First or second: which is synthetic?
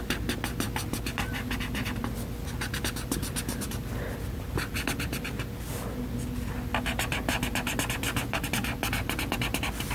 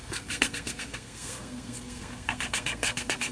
second